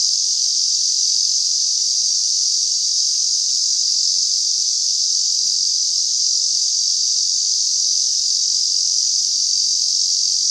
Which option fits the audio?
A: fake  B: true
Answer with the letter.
B